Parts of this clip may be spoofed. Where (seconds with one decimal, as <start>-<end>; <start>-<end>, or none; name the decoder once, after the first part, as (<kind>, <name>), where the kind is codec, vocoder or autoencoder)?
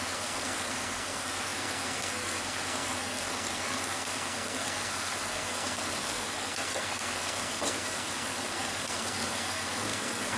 0.0-10.4 (codec, SNAC)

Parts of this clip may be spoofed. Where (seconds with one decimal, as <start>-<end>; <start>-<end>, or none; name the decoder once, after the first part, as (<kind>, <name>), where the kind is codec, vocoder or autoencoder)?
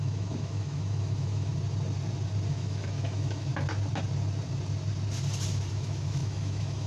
0.0-1.5 (autoencoder, DAC-VAE); 2.5-3.5; 5.7-6.9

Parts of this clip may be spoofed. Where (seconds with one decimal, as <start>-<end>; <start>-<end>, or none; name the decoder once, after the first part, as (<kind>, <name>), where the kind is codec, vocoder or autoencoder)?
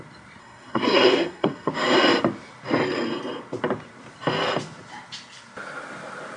0.4-1.7 (codec, SNAC)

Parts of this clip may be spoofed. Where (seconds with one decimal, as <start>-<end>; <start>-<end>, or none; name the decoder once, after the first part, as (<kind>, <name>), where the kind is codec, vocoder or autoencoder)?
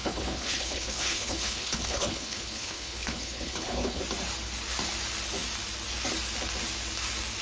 0.0-4.0 (codec, HILCodec)